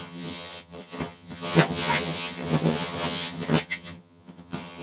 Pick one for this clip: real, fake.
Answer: fake